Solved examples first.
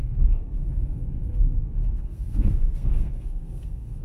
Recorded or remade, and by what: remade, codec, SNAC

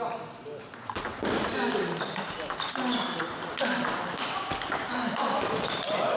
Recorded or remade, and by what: recorded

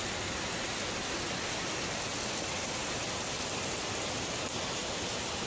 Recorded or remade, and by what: recorded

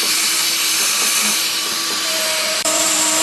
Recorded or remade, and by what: remade, vocoder, BigVGAN v2